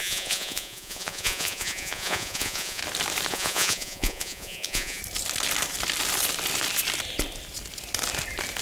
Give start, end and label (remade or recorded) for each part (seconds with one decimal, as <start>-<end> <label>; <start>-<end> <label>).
0.0-2.8 remade; 2.8-3.3 recorded; 3.3-5.0 remade; 5.0-8.6 recorded